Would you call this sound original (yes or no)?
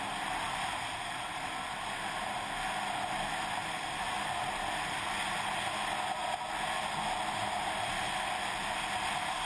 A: yes